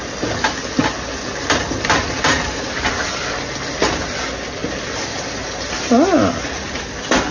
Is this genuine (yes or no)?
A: yes